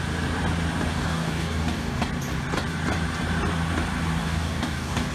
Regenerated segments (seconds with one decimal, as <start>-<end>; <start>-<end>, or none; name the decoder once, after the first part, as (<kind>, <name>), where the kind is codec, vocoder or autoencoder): 0.9-2.0 (codec, DAC); 4.2-5.1